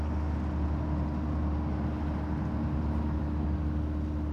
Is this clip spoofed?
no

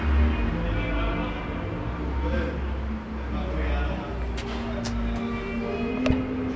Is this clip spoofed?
no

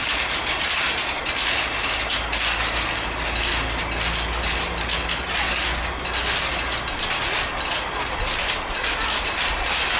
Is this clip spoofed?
no